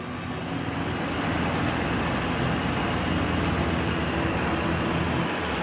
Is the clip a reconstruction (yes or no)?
no